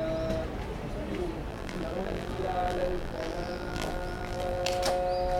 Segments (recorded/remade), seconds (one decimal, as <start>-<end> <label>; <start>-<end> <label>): 0.0-1.5 recorded; 1.5-4.7 remade; 4.7-5.4 recorded